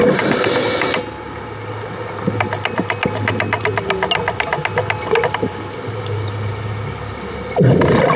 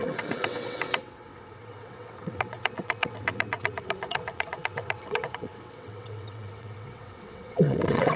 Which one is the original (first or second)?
first